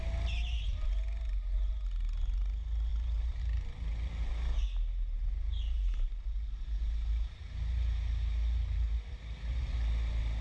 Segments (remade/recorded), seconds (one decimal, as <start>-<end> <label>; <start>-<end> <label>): 0.0-2.9 recorded; 2.9-3.4 remade; 3.4-10.4 recorded